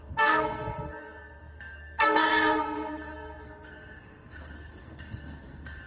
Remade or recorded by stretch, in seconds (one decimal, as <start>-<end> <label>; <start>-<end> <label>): 0.0-5.9 remade